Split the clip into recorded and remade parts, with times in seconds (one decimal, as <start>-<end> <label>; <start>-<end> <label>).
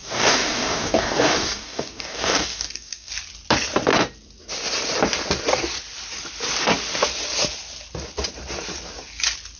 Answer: 0.0-3.1 remade; 3.1-9.6 recorded